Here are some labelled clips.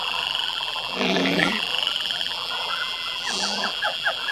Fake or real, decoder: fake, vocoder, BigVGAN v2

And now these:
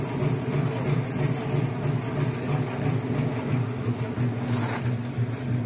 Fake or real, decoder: real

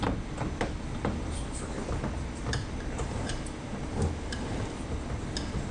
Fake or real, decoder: real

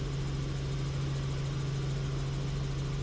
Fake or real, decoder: real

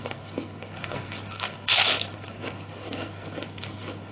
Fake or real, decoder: fake, codec, SNAC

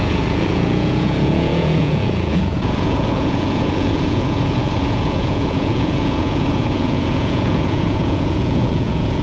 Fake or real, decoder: fake, vocoder, Vocos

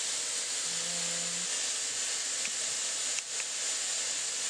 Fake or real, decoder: real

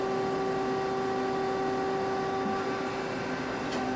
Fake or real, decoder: real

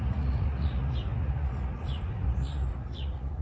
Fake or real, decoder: fake, vocoder, Vocos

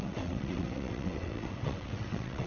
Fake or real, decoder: fake, vocoder, WaveNeXt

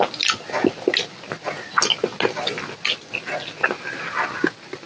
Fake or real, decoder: real